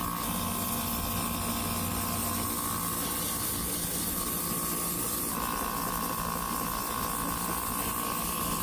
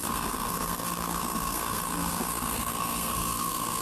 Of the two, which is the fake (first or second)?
second